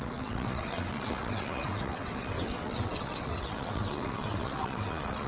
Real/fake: fake